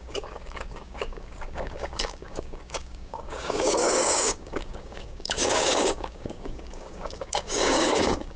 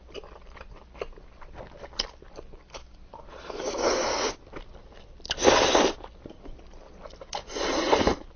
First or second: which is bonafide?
second